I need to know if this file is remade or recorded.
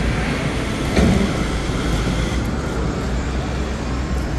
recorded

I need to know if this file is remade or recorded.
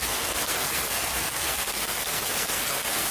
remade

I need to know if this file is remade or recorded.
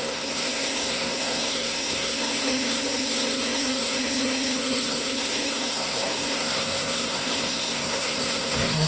remade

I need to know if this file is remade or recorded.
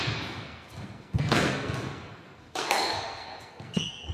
remade